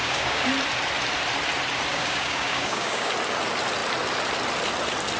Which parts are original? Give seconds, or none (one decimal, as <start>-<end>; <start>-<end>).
0.5-1.9; 3.1-5.2